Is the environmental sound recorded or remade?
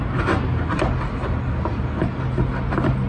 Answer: recorded